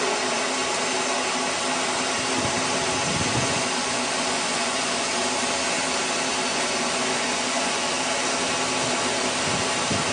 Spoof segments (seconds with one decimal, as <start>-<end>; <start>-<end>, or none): 3.3-5.1; 6.5-7.9